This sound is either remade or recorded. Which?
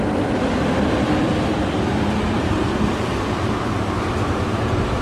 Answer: remade